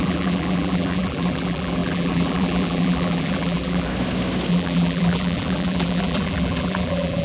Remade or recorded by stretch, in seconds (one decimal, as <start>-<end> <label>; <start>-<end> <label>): 0.0-3.9 remade; 3.9-4.5 recorded; 4.5-7.2 remade

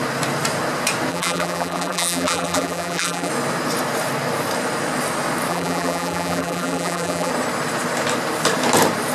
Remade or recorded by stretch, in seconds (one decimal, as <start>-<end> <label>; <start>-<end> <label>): 0.0-1.1 recorded; 1.1-3.3 remade; 3.3-5.5 recorded; 5.5-7.3 remade; 7.3-9.1 recorded

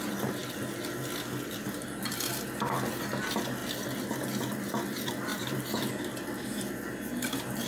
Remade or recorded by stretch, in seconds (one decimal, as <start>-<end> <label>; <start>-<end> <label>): 0.0-5.3 recorded; 5.3-5.9 remade; 5.9-7.7 recorded

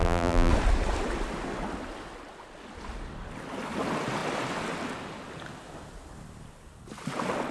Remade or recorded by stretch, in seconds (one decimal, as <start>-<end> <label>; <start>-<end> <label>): 0.0-0.5 remade; 0.5-7.5 recorded

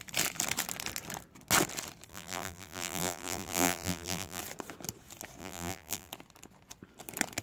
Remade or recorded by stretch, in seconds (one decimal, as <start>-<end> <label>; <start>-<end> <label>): 0.0-2.1 recorded; 2.1-4.4 remade; 4.4-5.4 recorded; 5.4-6.1 remade; 6.1-7.4 recorded